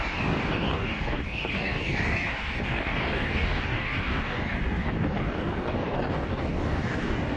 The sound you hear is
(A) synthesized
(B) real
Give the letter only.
A